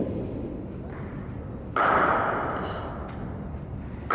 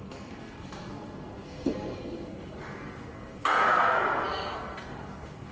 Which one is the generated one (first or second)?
second